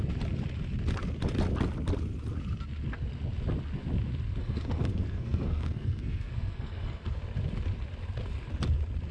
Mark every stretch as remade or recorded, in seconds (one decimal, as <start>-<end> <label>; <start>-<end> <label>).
0.0-4.4 recorded; 4.4-7.2 remade; 7.2-9.1 recorded